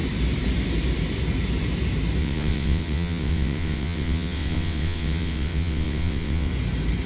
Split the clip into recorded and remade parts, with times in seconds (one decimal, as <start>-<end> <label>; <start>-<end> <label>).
0.0-2.2 recorded; 2.2-6.5 remade; 6.5-7.1 recorded

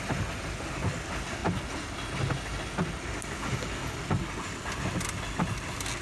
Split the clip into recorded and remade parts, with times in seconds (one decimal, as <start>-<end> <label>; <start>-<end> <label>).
0.0-6.0 recorded

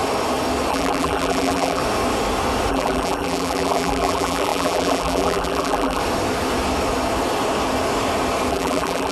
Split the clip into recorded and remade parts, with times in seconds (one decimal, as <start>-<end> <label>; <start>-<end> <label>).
0.0-0.7 recorded; 0.7-1.8 remade; 1.8-2.7 recorded; 2.7-6.0 remade; 6.0-8.5 recorded; 8.5-9.1 remade

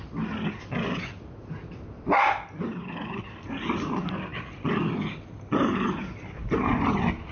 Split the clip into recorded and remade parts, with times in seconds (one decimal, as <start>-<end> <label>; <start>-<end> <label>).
0.0-7.3 recorded

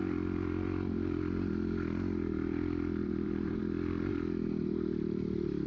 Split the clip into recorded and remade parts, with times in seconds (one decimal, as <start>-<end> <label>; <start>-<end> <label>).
0.0-3.0 recorded; 3.0-3.6 remade; 3.6-5.7 recorded

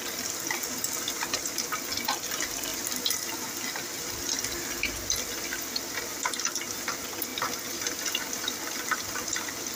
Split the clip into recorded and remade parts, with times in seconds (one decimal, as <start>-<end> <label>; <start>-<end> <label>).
0.0-2.7 recorded; 2.7-3.5 remade; 3.5-7.3 recorded; 7.3-9.3 remade; 9.3-9.8 recorded

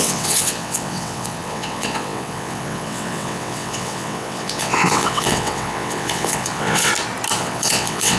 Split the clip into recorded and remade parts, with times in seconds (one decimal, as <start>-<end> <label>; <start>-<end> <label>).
0.0-6.9 remade; 6.9-7.4 recorded; 7.4-8.2 remade

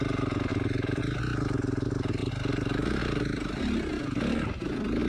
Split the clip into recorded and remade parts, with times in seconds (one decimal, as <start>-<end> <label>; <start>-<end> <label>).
0.0-0.5 recorded; 0.5-1.0 remade; 1.0-2.2 recorded; 2.2-3.6 remade; 3.6-5.1 recorded